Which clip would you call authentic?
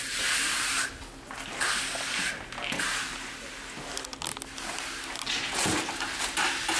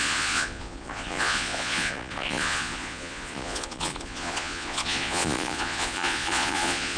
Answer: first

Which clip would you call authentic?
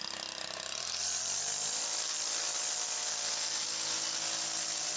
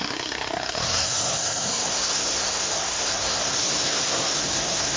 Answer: first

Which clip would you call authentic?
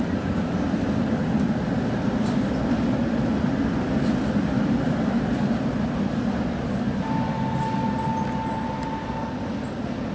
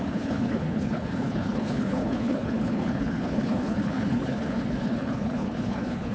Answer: first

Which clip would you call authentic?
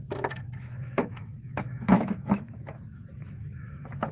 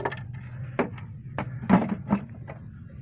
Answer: second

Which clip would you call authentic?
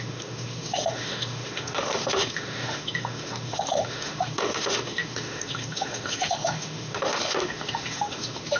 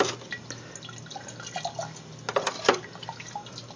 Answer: second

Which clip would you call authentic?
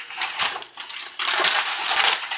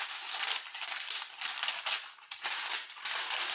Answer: second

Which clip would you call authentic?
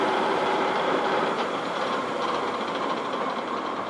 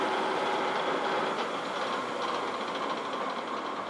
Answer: second